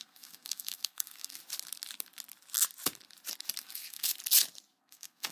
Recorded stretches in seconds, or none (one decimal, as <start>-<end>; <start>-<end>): 1.4-3.6; 4.1-4.8

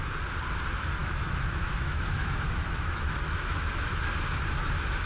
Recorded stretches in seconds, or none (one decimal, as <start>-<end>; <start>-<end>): 0.0-1.0; 4.1-5.1

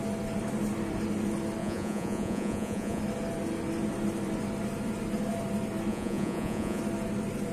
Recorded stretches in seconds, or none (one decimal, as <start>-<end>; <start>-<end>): 0.0-1.6; 3.0-5.9; 6.8-7.5

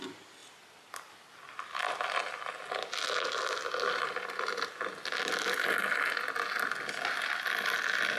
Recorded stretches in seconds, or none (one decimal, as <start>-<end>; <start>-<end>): 0.0-8.2

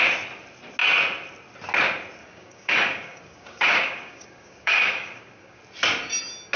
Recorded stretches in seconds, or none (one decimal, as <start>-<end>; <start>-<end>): 0.0-2.2; 5.6-6.6

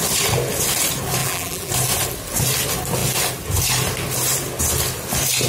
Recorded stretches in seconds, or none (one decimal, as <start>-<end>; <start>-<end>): 0.0-1.2; 1.7-5.5